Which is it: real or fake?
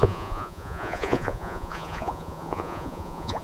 fake